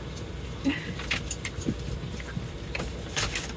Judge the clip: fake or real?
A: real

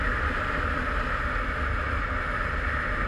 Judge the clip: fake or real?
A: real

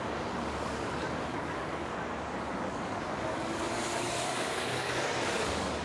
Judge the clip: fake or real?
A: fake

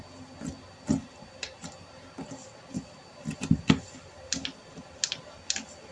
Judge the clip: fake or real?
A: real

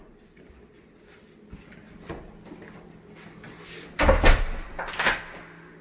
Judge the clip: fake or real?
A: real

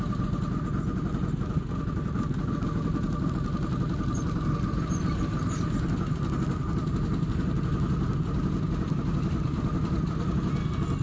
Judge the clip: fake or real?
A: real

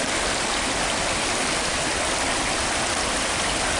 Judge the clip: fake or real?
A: real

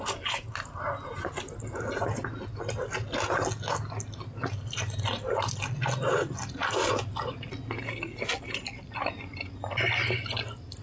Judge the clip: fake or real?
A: real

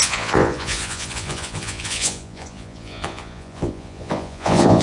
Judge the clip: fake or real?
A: fake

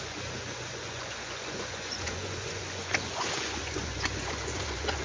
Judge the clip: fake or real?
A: fake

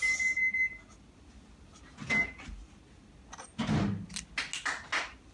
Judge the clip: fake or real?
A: real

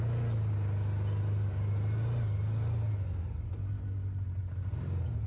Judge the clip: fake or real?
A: real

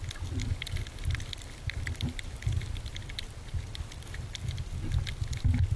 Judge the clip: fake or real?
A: real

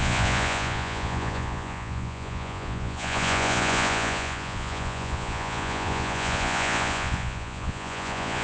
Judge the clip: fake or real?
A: fake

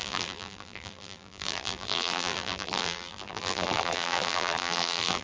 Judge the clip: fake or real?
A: fake